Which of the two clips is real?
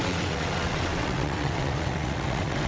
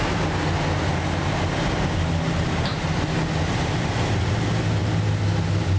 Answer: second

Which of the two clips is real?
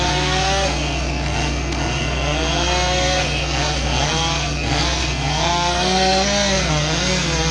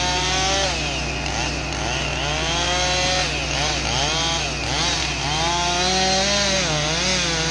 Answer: second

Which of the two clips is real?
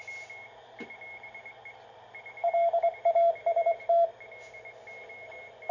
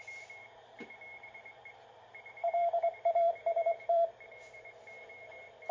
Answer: first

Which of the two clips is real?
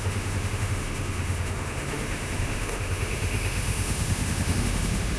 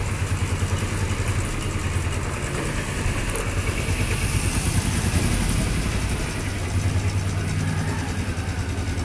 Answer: second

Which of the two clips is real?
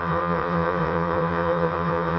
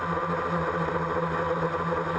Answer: second